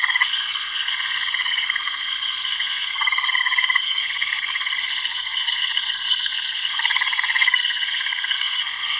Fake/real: fake